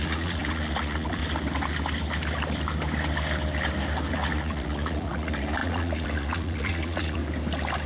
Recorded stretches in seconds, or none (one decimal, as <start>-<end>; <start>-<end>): 1.2-4.1; 7.2-7.9